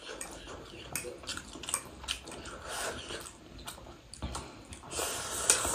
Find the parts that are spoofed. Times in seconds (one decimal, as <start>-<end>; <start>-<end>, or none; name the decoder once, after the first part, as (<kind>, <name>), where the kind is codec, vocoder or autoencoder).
none